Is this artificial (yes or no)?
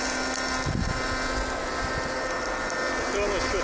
no